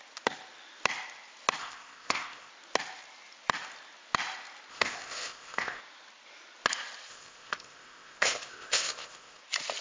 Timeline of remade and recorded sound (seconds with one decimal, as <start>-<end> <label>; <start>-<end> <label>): 0.0-1.6 recorded; 1.6-2.5 remade; 2.5-4.7 recorded; 4.7-5.8 remade; 5.8-7.1 recorded; 7.1-9.4 remade; 9.4-9.8 recorded